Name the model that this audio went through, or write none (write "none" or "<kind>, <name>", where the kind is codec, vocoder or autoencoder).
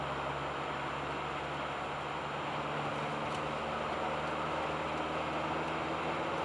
none